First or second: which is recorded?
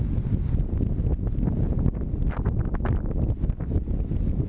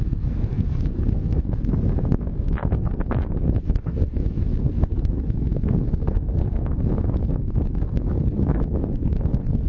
first